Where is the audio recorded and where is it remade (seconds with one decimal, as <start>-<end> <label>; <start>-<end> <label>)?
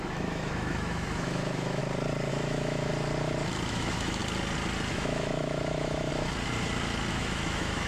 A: 0.0-1.8 remade; 1.8-2.3 recorded; 2.3-2.9 remade; 2.9-3.7 recorded; 3.7-4.2 remade; 4.2-4.9 recorded; 4.9-6.1 remade; 6.1-7.1 recorded; 7.1-7.9 remade